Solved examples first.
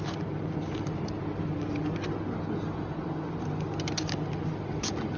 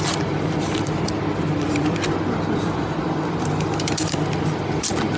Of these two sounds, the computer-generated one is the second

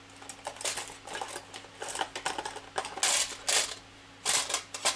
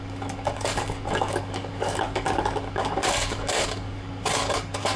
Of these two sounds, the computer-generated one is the second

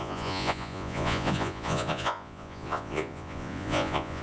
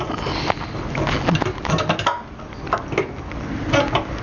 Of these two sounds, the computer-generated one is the first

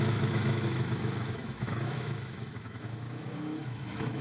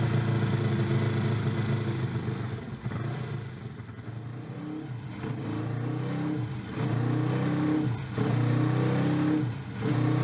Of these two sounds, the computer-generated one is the first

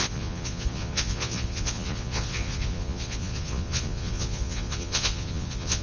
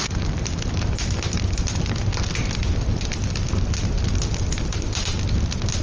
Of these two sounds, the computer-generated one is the first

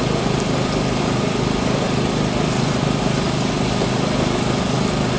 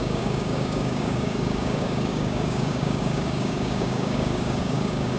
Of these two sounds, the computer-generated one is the second